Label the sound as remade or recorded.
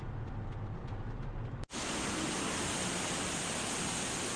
recorded